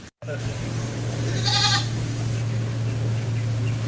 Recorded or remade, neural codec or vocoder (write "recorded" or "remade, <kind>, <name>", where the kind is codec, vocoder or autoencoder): recorded